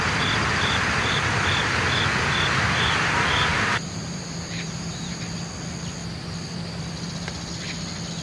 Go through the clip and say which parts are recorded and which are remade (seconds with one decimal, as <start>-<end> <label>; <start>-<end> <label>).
0.0-3.5 recorded; 3.5-5.2 remade; 5.2-8.2 recorded